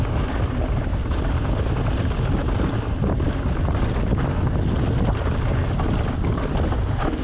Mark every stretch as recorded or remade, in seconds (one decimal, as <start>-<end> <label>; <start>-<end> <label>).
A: 0.0-7.2 recorded